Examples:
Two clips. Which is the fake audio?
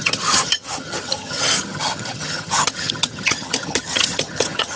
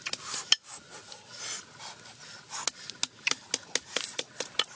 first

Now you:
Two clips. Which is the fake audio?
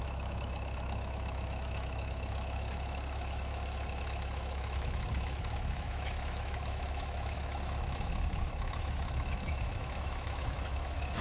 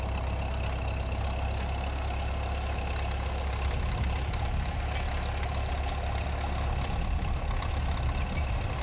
first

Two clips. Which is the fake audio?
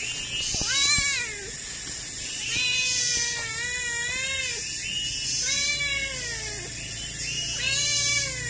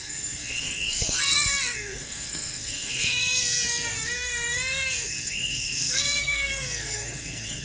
second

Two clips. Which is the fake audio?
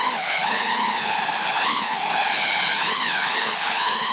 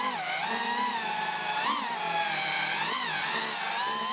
first